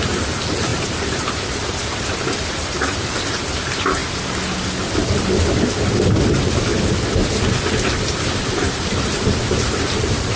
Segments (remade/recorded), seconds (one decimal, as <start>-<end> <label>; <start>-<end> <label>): 0.0-4.0 remade; 4.0-6.3 recorded; 6.3-6.7 remade; 6.7-7.7 recorded; 7.7-10.4 remade